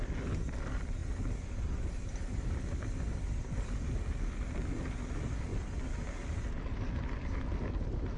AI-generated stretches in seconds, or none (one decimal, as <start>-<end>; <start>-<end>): none